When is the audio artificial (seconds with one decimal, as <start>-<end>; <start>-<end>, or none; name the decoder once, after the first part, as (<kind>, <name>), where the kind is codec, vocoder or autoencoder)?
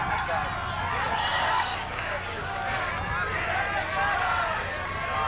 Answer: 1.3-2.9 (codec, DAC)